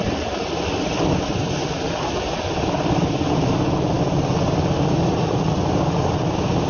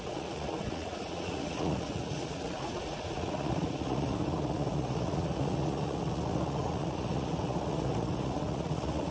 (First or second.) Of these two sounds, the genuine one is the first